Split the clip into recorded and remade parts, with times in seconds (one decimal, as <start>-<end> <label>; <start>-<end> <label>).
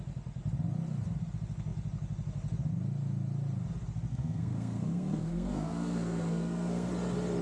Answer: 0.0-4.1 recorded; 4.1-6.9 remade; 6.9-7.4 recorded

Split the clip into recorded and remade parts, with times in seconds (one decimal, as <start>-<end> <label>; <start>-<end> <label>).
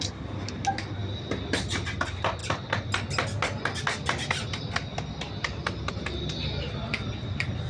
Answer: 0.0-7.7 recorded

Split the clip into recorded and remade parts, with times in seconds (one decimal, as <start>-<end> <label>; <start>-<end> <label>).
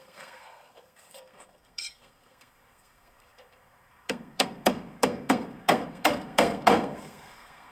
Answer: 0.0-7.7 remade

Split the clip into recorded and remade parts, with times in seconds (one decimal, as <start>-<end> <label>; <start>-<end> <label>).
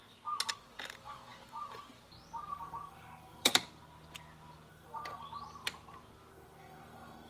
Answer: 0.0-2.5 recorded; 2.5-3.5 remade; 3.5-4.7 recorded; 4.7-5.2 remade; 5.2-6.3 recorded; 6.3-7.3 remade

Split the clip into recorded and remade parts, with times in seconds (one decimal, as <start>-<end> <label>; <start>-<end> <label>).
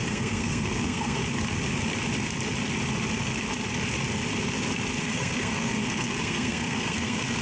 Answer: 0.0-1.2 remade; 1.2-5.0 recorded; 5.0-7.4 remade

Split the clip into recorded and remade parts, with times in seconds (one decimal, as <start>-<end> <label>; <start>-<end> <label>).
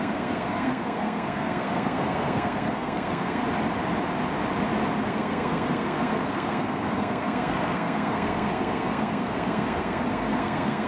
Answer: 0.0-3.4 remade; 3.4-5.1 recorded; 5.1-10.9 remade